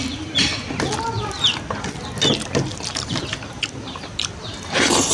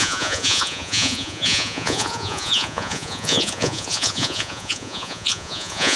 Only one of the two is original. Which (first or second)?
first